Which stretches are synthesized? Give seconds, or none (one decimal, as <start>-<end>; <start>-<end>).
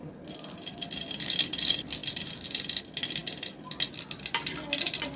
none